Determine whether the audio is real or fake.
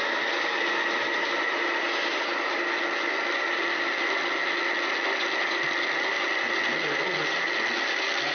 real